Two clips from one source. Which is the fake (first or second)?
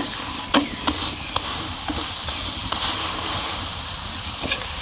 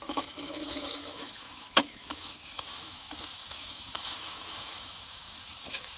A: second